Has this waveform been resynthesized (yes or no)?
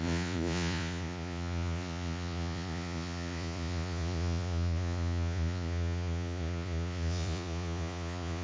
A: yes